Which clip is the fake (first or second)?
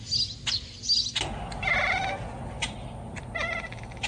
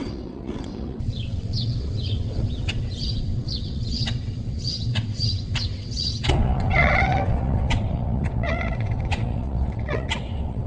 second